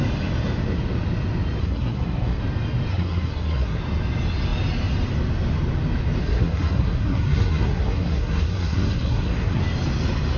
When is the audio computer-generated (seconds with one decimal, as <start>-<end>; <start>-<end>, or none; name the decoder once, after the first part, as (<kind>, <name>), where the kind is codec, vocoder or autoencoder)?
1.6-2.4 (codec, SNAC); 2.9-3.8; 6.2-9.6